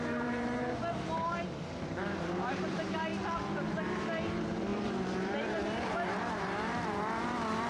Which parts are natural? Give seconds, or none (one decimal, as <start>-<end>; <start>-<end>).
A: 3.1-3.7